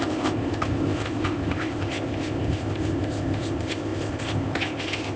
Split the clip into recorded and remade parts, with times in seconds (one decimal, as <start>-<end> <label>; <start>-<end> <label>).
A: 0.0-5.2 remade